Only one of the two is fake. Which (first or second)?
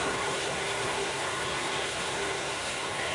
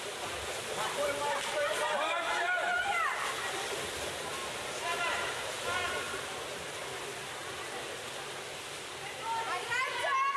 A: first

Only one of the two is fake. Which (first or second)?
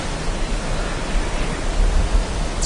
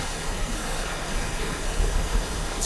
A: second